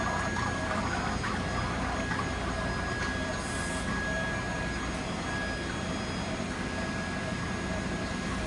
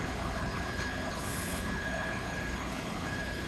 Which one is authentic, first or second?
first